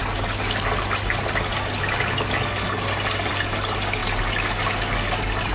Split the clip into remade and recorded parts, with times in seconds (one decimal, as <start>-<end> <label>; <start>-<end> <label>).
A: 0.0-5.5 recorded